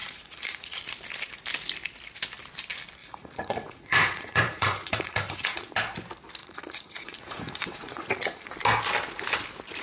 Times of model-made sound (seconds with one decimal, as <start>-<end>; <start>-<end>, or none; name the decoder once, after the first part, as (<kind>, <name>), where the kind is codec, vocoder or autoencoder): 0.0-0.8 (vocoder, Vocos); 3.0-5.7; 6.4-8.5